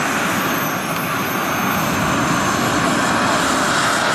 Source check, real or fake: real